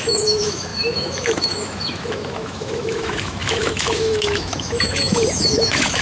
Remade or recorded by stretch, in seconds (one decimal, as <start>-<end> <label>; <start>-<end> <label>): 0.0-6.0 remade